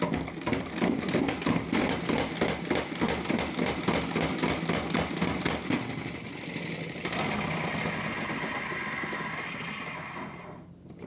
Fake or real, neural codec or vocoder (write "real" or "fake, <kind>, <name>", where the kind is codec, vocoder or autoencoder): real